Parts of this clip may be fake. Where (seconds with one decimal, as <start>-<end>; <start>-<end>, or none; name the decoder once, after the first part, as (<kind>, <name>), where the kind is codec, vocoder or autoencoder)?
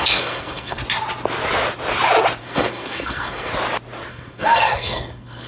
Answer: 0.0-0.8 (codec, SNAC); 2.4-3.5; 4.1-5.5